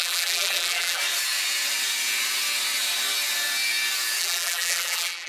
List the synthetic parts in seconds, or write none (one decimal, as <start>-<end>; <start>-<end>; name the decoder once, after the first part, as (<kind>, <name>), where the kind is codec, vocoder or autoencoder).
0.0-1.0 (vocoder, BigVGAN v2); 4.2-5.3